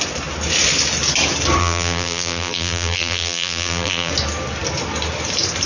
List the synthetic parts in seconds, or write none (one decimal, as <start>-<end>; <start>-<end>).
1.6-4.1